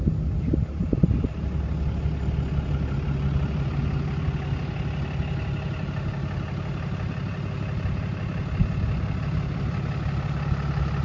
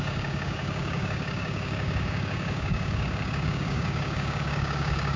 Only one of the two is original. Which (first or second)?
first